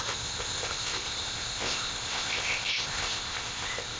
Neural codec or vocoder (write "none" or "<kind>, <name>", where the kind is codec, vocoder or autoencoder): codec, ZipCodec